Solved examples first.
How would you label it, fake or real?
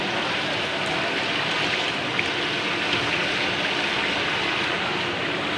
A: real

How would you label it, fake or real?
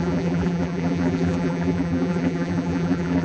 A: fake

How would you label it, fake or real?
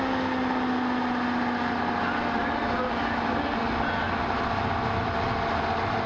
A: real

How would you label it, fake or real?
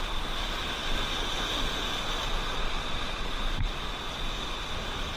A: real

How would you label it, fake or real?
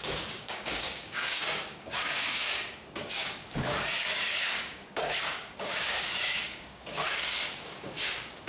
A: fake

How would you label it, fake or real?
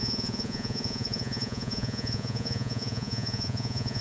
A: fake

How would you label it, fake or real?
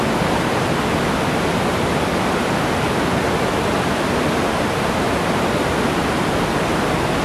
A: real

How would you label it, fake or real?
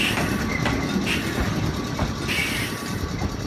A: real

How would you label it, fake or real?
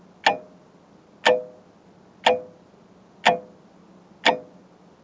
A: real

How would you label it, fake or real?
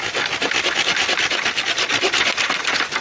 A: real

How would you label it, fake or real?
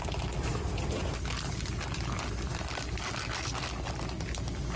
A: real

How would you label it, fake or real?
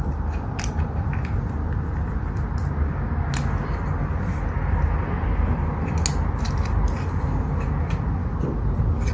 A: real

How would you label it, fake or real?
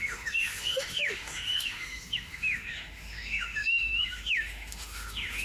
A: fake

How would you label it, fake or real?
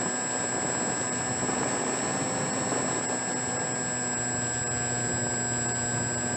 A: real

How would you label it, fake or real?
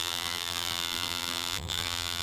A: fake